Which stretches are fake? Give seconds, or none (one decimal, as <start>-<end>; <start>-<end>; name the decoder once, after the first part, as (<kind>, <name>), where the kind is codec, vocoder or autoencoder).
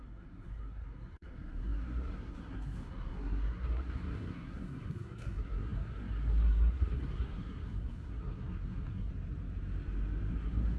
0.0-9.1 (codec, SNAC); 10.3-10.8